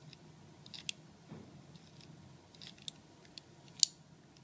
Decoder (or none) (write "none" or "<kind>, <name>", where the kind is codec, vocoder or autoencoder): none